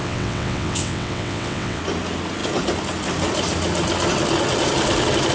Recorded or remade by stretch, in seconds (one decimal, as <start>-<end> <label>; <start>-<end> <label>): 0.0-1.8 remade; 1.8-5.3 recorded